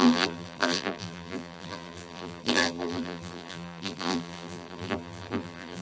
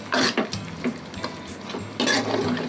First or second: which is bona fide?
second